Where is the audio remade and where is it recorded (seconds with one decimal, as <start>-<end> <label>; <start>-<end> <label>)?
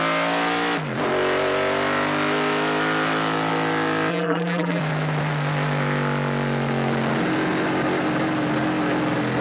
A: 0.0-4.1 recorded; 4.1-4.8 remade; 4.8-9.4 recorded